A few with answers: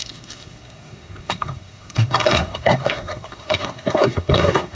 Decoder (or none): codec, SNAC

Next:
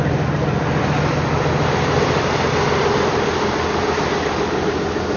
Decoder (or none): none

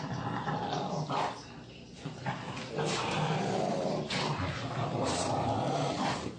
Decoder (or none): none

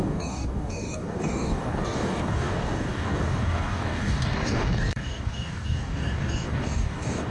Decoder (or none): codec, DAC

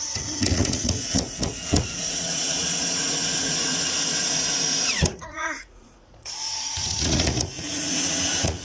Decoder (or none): vocoder, Vocos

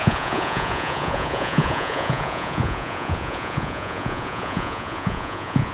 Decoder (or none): vocoder, Vocos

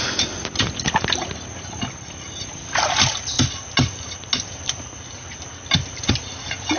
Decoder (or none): none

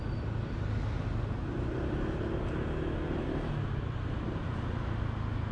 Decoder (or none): none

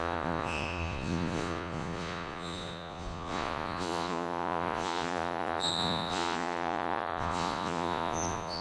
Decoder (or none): vocoder, Vocos